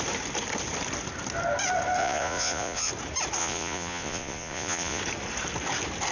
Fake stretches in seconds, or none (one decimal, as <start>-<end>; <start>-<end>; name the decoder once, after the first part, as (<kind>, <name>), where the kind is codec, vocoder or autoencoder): 2.0-2.9 (vocoder, Vocos); 3.4-5.0